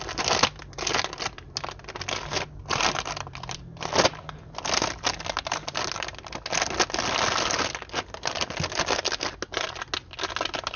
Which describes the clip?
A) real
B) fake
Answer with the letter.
A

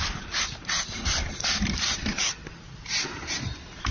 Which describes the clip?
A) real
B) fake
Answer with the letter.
B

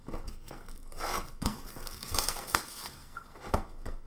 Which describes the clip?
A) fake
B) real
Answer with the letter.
A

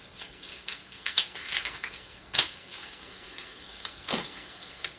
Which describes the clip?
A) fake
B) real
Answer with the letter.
A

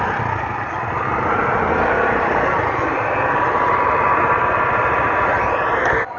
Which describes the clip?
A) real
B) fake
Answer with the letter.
A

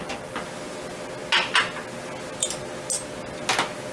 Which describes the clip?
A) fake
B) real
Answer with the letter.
B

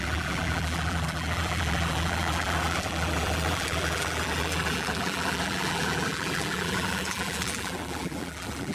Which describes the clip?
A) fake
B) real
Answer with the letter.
A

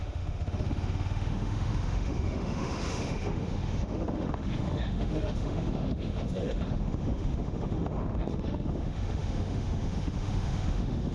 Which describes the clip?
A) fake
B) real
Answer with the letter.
A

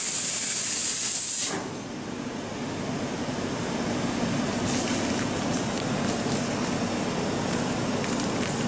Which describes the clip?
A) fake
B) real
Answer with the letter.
B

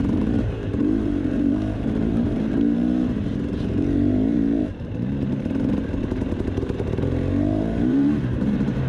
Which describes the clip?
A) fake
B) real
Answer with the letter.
A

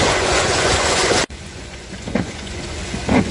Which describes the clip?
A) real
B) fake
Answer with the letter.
B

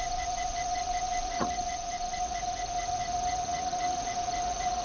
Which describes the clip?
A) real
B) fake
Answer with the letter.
B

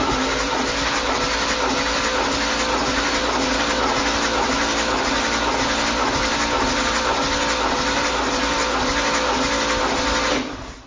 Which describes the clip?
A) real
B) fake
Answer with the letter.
A